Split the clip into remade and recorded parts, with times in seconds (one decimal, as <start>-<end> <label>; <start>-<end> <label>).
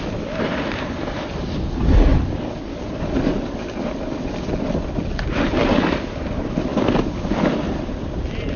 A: 0.0-8.6 recorded